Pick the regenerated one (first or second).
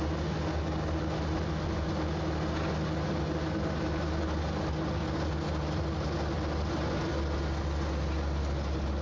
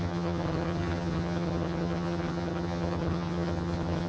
second